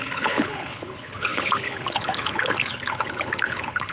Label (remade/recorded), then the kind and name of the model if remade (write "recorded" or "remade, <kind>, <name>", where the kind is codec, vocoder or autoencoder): remade, codec, HILCodec